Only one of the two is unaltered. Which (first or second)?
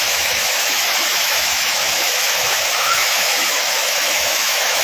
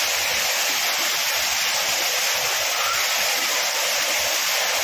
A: second